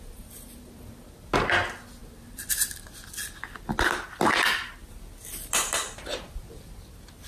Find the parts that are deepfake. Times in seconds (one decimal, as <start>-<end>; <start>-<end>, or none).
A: 2.0-2.8